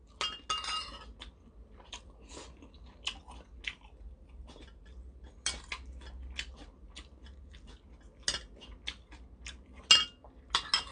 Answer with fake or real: real